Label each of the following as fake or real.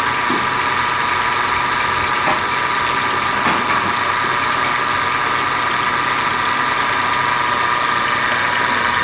real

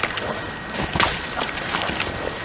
real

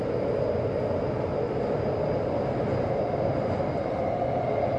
real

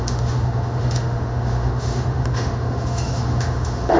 fake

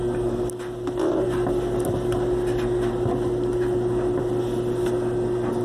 real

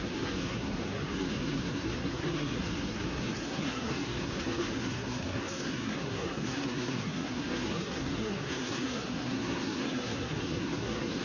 fake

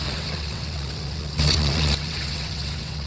fake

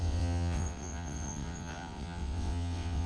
fake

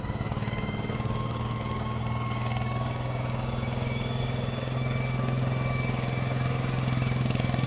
fake